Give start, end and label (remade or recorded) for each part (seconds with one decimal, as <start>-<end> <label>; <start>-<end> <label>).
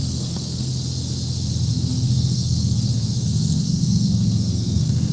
0.0-0.7 remade; 0.7-1.7 recorded; 1.7-5.1 remade